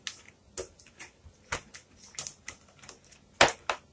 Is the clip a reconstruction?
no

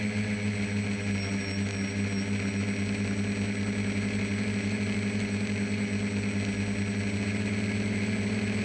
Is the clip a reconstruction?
no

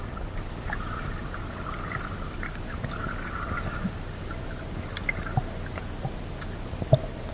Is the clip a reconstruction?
no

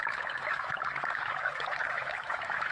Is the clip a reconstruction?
yes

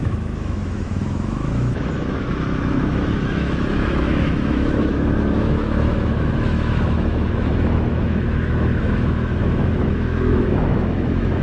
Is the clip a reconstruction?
yes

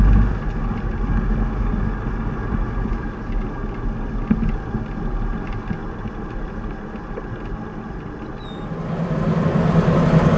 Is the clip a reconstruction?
no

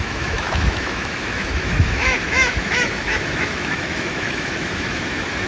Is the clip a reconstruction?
yes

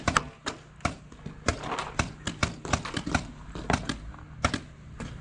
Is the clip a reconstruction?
no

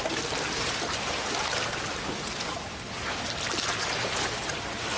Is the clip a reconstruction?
no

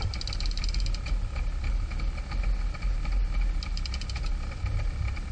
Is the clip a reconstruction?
no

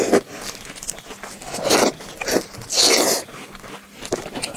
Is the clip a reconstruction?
no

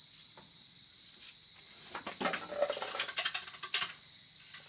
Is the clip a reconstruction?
no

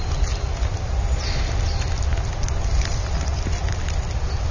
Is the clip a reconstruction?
no